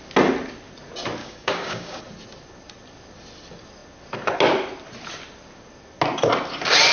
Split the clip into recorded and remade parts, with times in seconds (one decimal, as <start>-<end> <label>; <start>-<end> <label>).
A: 0.0-1.2 recorded; 1.2-2.0 remade; 2.0-6.9 recorded